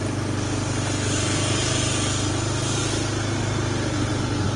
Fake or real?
real